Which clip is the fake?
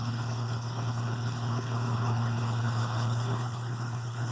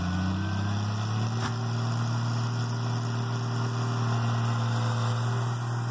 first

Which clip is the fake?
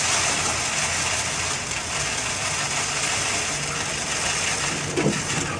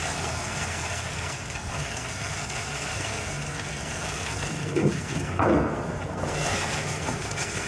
second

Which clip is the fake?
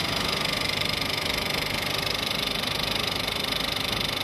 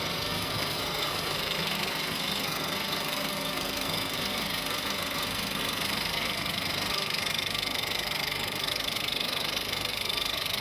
second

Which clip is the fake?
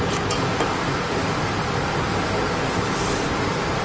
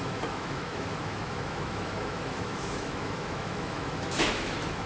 second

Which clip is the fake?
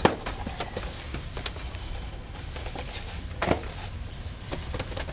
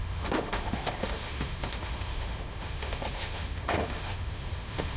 second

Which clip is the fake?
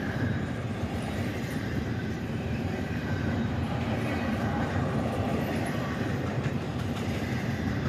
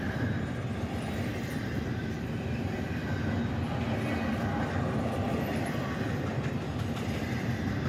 first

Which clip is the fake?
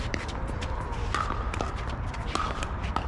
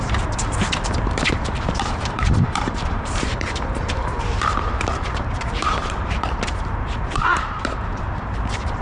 second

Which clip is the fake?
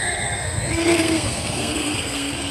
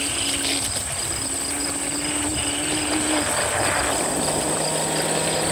first